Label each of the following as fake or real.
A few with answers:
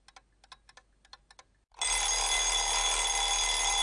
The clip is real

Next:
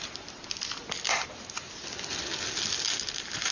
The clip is real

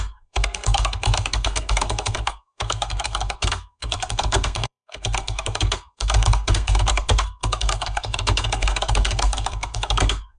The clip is fake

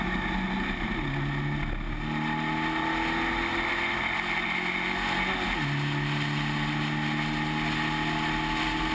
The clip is real